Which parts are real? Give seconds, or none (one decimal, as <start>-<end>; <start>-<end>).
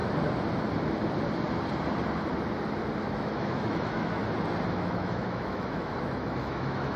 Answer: 0.0-3.0; 4.2-4.7